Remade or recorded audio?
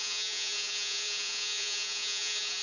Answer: remade